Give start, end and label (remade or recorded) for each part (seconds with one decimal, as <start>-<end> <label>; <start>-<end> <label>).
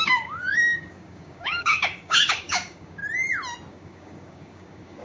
0.0-3.0 remade; 3.0-3.7 recorded; 3.7-5.0 remade